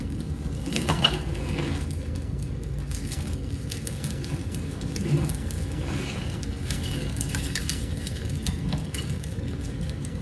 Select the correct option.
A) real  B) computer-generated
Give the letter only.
B